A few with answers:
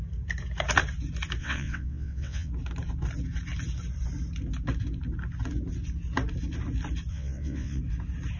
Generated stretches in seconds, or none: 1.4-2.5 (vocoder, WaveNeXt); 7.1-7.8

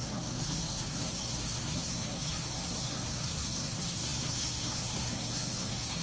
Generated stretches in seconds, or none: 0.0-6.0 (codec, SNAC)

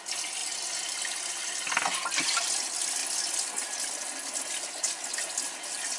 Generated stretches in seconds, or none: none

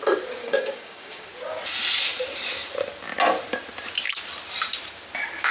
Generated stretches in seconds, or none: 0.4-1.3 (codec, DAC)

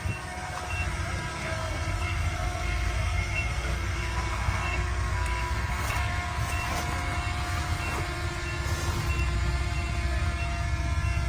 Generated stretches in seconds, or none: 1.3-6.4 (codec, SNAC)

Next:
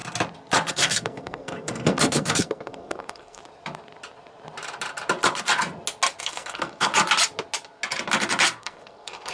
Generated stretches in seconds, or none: 0.7-3.4 (codec, SNAC); 6.2-6.9; 8.6-9.3